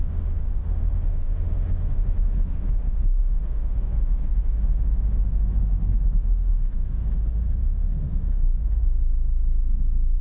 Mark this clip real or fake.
fake